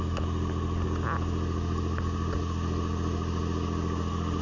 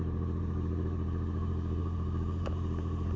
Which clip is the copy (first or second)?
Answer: second